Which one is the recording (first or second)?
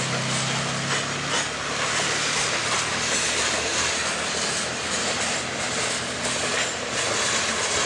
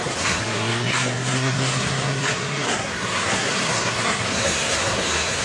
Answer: first